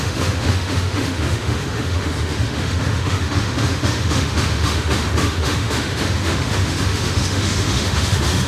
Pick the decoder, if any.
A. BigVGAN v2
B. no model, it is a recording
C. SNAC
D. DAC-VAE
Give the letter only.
D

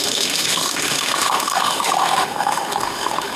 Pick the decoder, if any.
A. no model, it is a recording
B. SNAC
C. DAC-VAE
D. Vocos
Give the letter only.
C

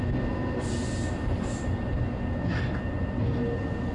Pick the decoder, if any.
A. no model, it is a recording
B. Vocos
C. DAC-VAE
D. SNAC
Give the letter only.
A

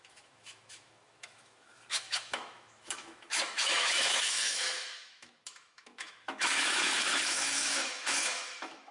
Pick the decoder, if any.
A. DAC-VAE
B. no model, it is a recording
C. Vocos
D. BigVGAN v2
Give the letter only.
A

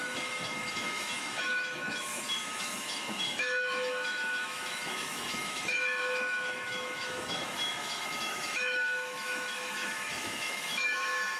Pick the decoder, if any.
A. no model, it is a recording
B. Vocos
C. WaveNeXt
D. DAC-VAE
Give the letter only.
D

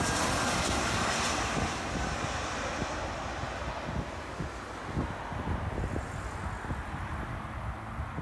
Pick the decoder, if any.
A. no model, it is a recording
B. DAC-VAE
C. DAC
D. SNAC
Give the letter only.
A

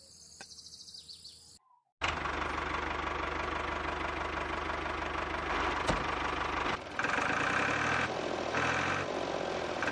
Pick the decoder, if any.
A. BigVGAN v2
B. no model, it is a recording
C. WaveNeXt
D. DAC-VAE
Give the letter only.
B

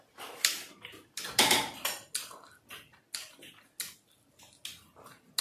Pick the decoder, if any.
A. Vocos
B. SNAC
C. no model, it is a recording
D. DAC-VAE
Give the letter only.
C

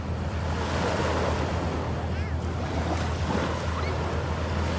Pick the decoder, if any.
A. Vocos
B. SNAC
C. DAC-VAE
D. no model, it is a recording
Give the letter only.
D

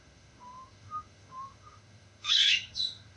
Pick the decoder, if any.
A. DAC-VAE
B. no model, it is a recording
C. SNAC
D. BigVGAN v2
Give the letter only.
A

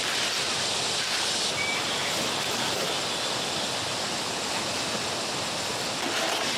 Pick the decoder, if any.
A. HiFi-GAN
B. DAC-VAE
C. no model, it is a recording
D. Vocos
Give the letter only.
C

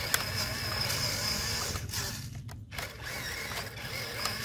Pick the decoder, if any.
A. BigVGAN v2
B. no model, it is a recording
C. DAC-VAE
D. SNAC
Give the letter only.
B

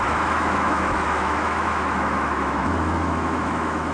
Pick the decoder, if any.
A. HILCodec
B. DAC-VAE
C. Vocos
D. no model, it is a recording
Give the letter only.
B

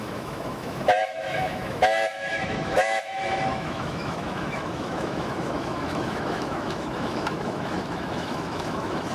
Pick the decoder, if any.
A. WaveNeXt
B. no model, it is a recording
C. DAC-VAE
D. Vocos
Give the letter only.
C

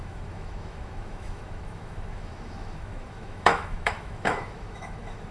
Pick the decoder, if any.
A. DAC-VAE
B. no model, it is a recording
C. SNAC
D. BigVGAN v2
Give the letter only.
A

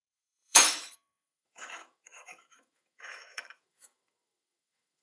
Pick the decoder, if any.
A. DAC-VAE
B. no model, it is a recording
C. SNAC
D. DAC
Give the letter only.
A